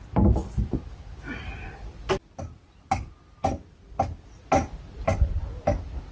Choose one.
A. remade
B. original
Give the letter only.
B